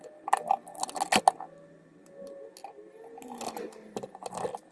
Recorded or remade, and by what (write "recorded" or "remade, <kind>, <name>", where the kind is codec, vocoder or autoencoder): recorded